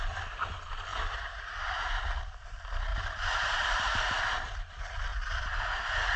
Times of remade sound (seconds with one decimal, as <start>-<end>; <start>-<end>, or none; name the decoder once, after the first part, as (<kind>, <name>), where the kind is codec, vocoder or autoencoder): 0.9-1.9 (vocoder, BigVGAN v2); 2.9-4.2